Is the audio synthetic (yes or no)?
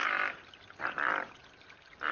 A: no